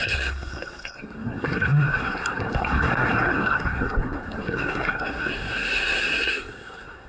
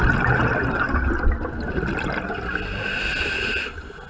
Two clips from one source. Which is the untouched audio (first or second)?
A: second